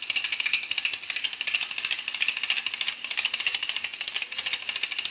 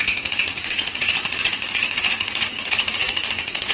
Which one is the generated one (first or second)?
second